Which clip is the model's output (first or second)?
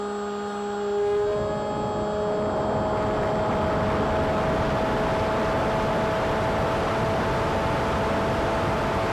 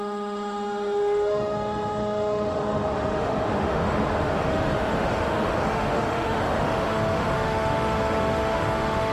second